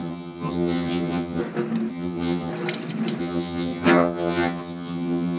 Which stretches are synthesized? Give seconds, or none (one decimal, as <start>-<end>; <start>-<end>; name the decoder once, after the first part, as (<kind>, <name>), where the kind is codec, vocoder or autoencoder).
0.0-1.4 (vocoder, HiFi-GAN); 1.9-2.5; 3.2-5.4